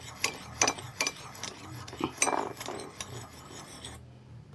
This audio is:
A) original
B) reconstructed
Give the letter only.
A